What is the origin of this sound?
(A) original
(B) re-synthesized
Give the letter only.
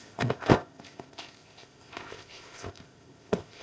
B